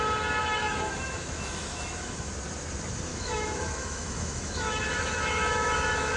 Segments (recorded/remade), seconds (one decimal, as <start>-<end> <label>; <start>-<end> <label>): 0.0-0.4 recorded; 0.4-2.3 remade; 2.3-3.1 recorded; 3.1-6.2 remade